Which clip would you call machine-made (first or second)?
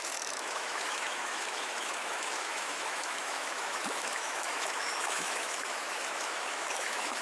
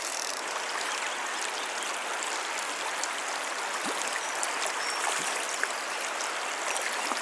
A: first